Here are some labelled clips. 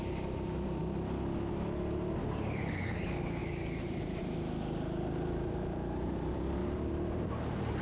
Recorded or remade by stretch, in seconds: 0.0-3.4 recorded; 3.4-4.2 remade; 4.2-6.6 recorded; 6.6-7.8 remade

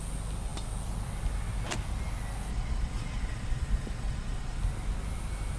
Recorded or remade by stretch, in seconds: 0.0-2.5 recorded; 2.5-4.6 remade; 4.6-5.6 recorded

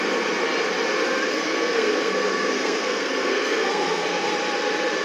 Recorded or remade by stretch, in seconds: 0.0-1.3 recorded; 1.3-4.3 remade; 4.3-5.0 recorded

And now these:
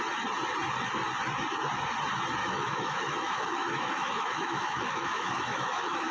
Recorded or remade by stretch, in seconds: 0.0-2.4 recorded; 2.4-6.1 remade

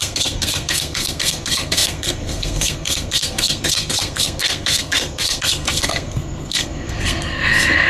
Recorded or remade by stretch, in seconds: 0.0-7.9 remade

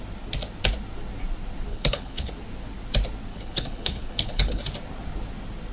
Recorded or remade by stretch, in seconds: 0.0-1.7 recorded; 1.7-2.3 remade; 2.3-3.3 recorded; 3.3-4.6 remade; 4.6-5.7 recorded

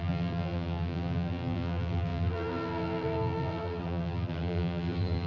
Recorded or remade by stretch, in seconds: 0.0-5.3 remade